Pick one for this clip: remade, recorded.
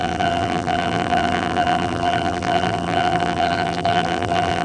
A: remade